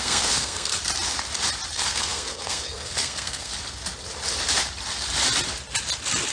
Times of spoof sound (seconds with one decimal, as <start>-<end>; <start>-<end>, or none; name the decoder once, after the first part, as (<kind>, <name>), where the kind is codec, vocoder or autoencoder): 0.0-0.7 (codec, SNAC); 1.7-3.5